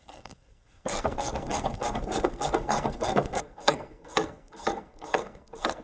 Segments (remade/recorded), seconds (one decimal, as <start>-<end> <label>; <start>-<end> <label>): 0.0-5.8 remade